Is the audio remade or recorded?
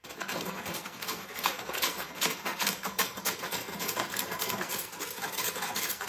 remade